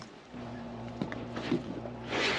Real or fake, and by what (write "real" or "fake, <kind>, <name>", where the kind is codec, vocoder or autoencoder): fake, vocoder, Vocos